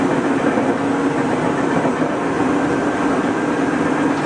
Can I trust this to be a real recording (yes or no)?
yes